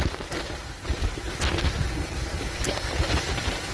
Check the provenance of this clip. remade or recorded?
recorded